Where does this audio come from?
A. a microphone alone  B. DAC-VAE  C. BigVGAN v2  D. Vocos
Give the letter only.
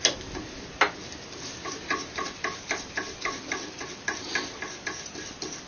A